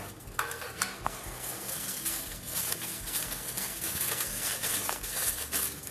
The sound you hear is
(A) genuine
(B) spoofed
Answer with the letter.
B